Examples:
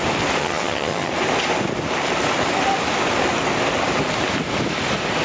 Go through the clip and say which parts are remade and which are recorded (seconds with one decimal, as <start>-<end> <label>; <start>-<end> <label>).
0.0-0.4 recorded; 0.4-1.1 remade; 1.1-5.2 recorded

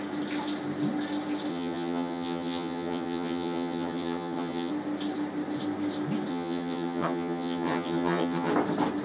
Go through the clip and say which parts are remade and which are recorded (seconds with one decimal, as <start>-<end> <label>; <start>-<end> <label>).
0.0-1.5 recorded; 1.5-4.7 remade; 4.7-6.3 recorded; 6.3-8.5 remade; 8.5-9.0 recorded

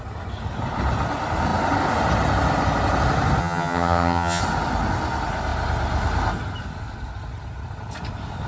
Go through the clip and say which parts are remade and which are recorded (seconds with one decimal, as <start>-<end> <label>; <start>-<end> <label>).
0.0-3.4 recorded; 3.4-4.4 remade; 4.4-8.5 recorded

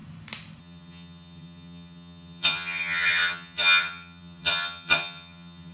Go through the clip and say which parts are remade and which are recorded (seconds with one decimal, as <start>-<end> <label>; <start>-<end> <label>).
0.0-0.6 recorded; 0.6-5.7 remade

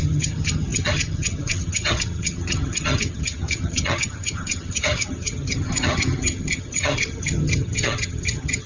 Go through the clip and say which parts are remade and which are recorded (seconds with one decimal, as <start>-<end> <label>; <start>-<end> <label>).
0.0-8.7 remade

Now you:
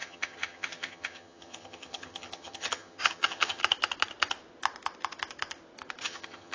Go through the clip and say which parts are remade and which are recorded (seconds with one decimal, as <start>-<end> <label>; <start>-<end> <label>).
0.0-3.6 remade; 3.6-6.0 recorded; 6.0-6.5 remade

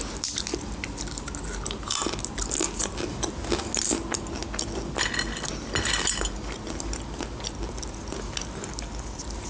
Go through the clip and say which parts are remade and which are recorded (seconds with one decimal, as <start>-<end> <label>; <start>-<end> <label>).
0.0-9.5 recorded

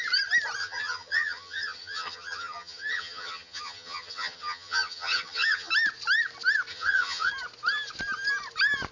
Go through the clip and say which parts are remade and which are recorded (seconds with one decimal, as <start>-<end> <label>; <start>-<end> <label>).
0.0-0.6 recorded; 0.6-5.7 remade; 5.7-6.7 recorded; 6.7-7.3 remade; 7.3-8.9 recorded